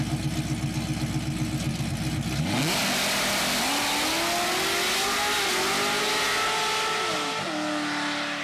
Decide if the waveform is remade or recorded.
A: recorded